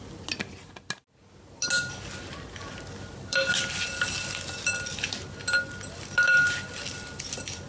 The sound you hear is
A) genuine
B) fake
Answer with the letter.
A